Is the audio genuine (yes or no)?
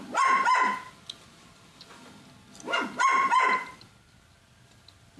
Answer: yes